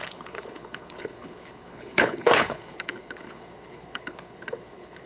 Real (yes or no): no